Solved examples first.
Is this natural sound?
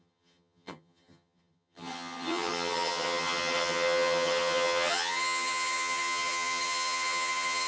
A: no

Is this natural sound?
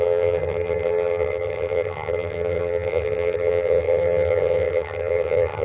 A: no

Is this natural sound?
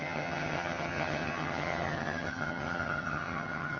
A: no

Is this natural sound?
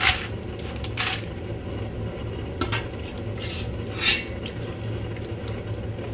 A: yes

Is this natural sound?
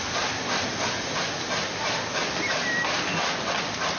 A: yes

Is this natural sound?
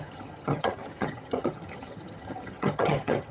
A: no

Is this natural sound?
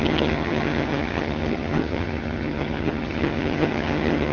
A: no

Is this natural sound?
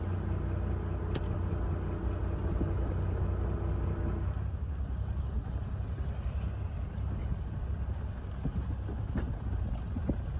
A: yes